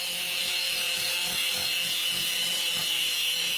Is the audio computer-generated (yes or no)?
yes